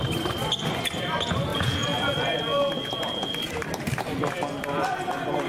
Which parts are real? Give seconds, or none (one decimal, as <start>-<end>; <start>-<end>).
0.0-1.5; 3.5-5.5